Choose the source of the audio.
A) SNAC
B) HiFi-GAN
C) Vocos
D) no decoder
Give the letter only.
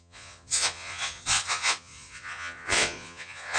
C